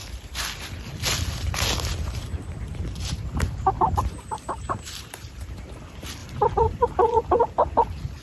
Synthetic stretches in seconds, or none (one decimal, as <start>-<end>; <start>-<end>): 2.7-5.8; 6.2-7.4